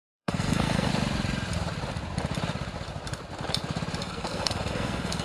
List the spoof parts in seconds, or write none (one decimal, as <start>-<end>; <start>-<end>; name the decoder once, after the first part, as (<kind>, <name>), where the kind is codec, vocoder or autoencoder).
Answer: 0.0-0.9 (codec, SNAC); 4.0-5.2